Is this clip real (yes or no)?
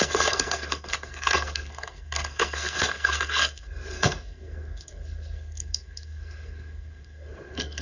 no